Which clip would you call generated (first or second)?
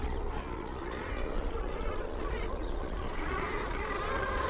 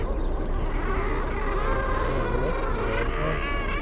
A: first